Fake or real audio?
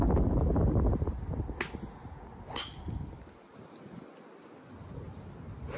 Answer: real